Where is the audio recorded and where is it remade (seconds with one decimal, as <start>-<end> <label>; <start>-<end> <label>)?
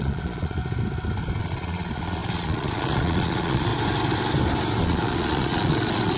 0.0-0.6 remade; 0.6-1.4 recorded; 1.4-3.7 remade; 3.7-4.8 recorded; 4.8-6.2 remade